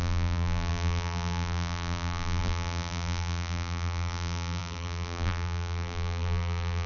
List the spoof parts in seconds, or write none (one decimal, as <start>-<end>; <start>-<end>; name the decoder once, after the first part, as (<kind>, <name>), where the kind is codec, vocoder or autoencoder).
0.0-6.9 (vocoder, BigVGAN v2)